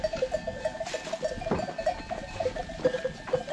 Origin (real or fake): real